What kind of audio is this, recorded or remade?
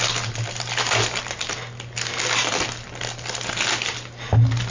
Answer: recorded